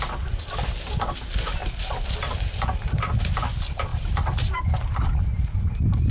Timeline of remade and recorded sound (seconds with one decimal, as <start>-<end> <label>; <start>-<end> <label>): 0.0-6.1 recorded